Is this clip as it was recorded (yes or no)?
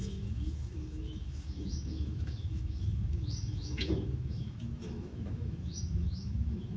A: no